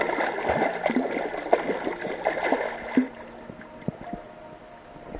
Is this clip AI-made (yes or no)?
no